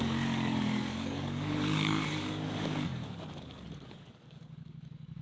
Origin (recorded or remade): remade